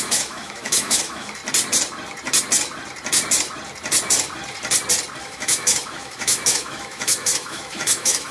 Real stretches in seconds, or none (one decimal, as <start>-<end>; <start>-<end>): 1.4-5.2